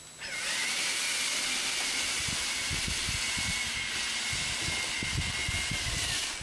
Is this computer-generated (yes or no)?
no